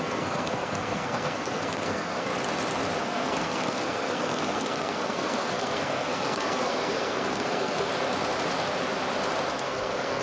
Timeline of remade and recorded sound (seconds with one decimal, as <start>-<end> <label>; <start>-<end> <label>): 0.0-2.3 remade; 2.3-3.0 recorded; 3.0-7.9 remade; 7.9-9.5 recorded; 9.5-10.2 remade